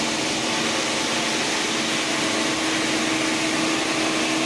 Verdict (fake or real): real